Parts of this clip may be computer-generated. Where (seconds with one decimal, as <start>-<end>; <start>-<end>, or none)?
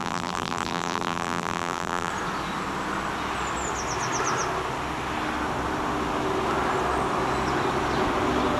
0.0-2.1